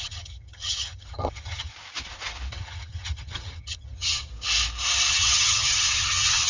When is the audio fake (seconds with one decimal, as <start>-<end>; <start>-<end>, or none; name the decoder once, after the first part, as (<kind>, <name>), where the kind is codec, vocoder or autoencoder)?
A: 0.0-1.7 (vocoder, HiFi-GAN); 2.5-4.3; 5.1-6.5